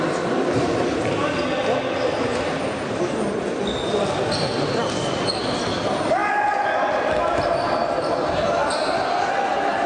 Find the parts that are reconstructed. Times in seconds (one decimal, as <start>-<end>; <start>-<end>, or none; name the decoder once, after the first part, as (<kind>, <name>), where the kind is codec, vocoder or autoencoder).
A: none

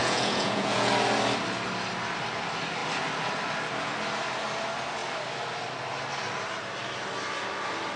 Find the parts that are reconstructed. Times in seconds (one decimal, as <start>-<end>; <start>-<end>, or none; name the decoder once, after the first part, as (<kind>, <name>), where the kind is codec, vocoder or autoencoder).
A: 0.0-0.9 (vocoder, Vocos)